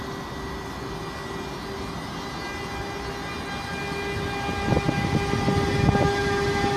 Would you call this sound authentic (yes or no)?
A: yes